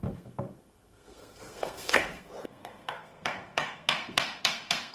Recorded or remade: remade